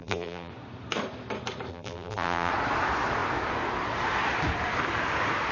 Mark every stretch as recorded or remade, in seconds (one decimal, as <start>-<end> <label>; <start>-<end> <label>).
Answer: 0.0-0.5 remade; 0.5-1.7 recorded; 1.7-2.5 remade; 2.5-5.5 recorded